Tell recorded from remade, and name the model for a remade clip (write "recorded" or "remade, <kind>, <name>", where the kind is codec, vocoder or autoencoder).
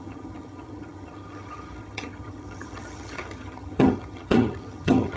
remade, vocoder, HiFi-GAN